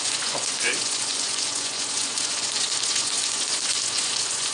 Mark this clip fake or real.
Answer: fake